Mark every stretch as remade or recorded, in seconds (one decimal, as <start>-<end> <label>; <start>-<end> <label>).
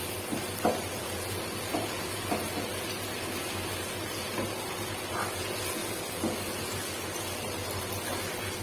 0.0-8.6 recorded